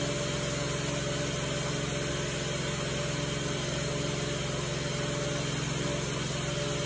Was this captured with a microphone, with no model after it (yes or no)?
yes